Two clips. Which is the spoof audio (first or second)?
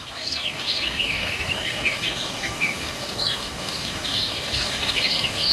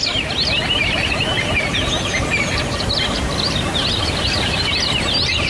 first